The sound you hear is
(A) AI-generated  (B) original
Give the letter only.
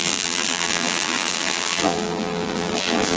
A